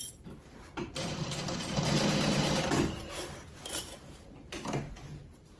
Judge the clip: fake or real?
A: fake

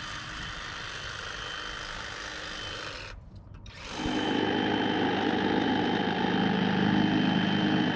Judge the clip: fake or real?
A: real